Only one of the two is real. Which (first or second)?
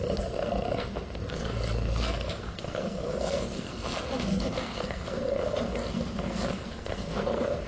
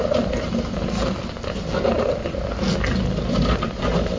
second